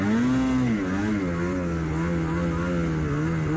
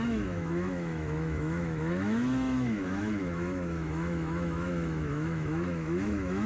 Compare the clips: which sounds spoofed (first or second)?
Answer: second